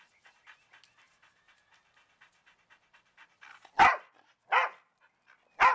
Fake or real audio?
real